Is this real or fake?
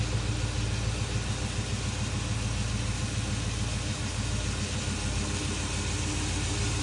real